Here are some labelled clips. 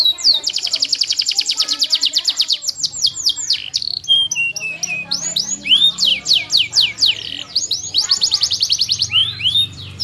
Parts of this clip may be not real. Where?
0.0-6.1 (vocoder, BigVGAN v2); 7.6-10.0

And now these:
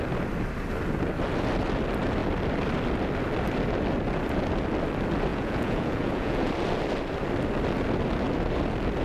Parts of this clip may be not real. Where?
5.3-6.5 (vocoder, Vocos)

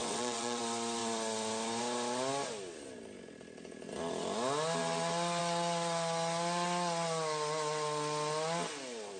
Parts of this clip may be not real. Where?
0.0-0.6 (vocoder, WaveNeXt)